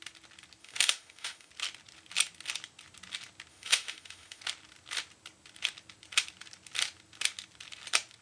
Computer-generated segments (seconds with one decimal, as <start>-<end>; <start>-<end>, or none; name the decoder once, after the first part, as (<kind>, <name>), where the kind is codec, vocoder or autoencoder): 0.6-1.5 (autoencoder, DAC-VAE); 3.5-4.4